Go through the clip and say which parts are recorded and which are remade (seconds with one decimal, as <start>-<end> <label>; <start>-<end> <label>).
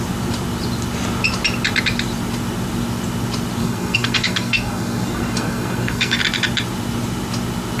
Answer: 0.0-3.6 recorded; 3.6-6.2 remade; 6.2-7.8 recorded